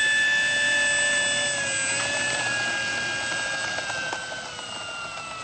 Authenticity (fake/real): real